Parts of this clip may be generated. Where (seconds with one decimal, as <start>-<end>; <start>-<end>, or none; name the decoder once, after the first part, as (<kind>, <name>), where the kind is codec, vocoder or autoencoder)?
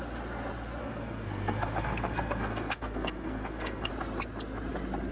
0.8-3.9 (codec, SNAC)